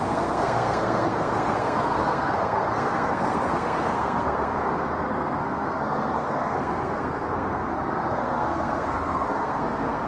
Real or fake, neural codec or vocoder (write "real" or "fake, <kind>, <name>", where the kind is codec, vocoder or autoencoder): fake, codec, SNAC